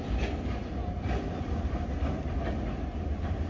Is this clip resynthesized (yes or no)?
no